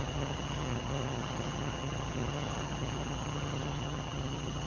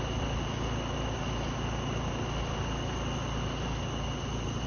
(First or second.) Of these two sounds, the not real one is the first